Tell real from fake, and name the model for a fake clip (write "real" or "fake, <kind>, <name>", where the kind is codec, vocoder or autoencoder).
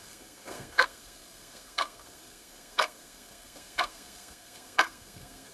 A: fake, codec, SNAC